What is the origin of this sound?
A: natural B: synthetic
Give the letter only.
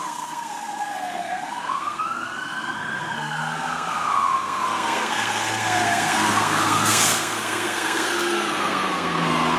B